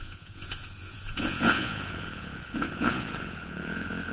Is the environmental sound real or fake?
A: fake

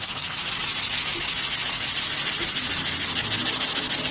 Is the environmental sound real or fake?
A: real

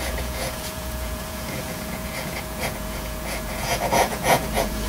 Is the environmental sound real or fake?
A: fake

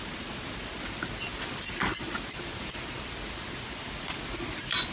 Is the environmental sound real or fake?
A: real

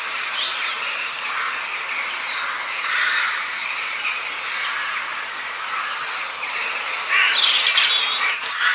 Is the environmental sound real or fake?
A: real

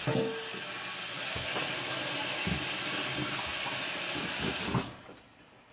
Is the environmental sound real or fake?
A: real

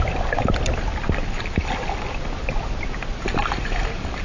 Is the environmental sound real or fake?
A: real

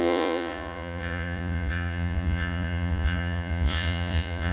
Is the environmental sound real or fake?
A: fake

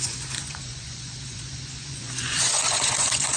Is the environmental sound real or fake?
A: fake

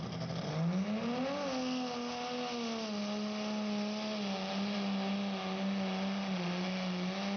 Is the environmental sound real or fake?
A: real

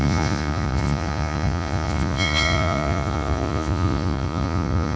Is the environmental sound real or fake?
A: fake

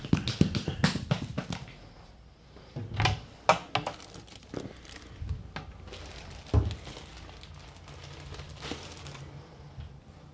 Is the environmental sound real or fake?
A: real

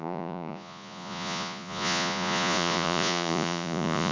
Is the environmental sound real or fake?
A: fake